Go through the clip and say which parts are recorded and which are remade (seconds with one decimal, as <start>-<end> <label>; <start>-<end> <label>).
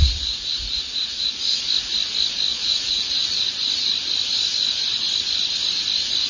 0.0-1.3 remade; 1.3-2.5 recorded; 2.5-3.4 remade; 3.4-6.3 recorded